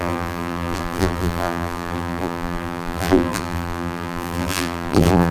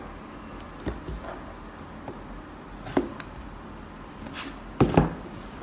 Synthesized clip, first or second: first